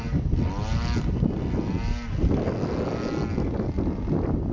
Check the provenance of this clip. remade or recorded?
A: recorded